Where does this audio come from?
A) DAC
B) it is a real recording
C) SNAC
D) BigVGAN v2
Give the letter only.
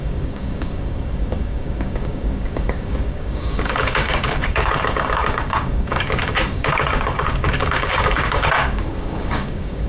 A